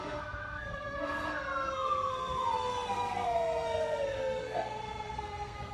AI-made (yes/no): yes